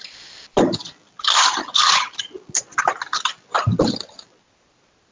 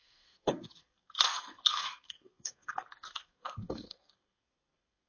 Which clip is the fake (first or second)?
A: second